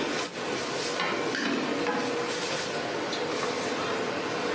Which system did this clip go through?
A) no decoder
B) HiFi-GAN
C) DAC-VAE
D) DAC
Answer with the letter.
A